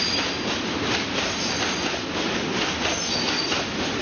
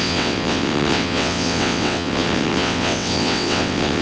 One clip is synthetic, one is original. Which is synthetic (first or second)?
second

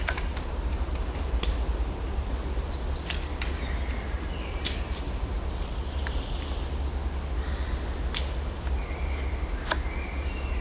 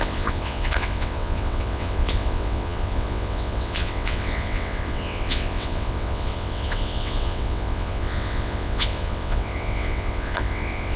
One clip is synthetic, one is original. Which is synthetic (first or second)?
second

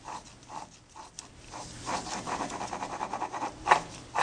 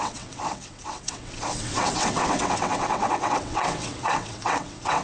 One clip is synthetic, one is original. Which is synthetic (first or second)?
second